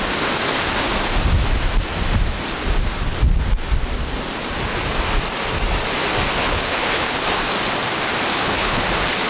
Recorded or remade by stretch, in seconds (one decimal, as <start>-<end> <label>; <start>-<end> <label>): 0.0-6.4 recorded; 6.4-7.2 remade; 7.2-8.3 recorded; 8.3-8.8 remade; 8.8-9.3 recorded